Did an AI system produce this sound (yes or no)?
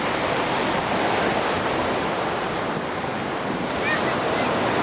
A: no